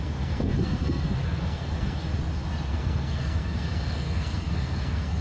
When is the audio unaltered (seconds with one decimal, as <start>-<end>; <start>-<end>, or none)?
2.0-2.7